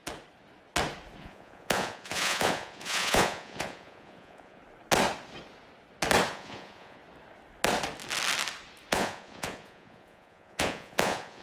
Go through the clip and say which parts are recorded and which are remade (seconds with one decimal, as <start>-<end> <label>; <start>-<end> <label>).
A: 0.0-1.2 recorded; 1.2-4.6 remade; 4.6-6.3 recorded; 6.3-7.0 remade; 7.0-8.9 recorded; 8.9-11.4 remade

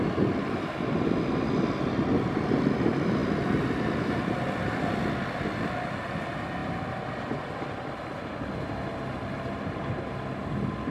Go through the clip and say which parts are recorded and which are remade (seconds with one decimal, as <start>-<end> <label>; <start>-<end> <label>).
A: 0.0-10.9 recorded

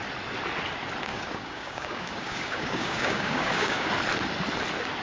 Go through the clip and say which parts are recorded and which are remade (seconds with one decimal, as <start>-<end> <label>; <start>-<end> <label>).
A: 0.0-1.1 recorded; 1.1-3.9 remade; 3.9-5.0 recorded

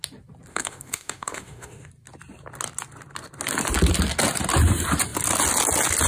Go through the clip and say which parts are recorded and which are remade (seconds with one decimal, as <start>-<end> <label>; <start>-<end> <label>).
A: 0.0-0.5 recorded; 0.5-1.9 remade; 1.9-6.1 recorded